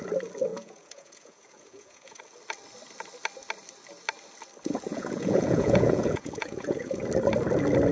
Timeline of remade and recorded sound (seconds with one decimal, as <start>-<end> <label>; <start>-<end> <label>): 0.0-0.5 recorded; 0.5-2.2 remade; 2.2-4.9 recorded; 4.9-7.0 remade; 7.0-7.9 recorded